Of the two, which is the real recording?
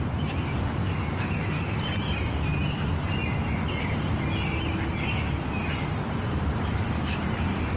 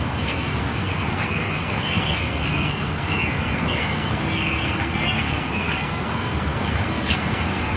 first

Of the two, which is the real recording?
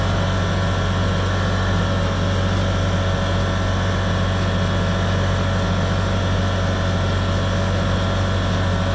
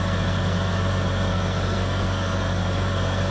first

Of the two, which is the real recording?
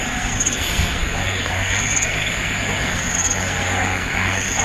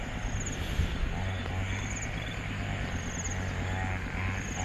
second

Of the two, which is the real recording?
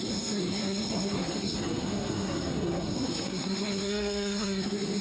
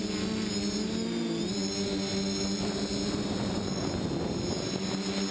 second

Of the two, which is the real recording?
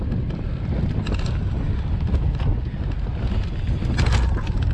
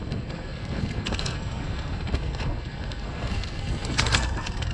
first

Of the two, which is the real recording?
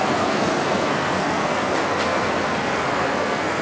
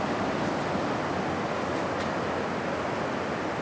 second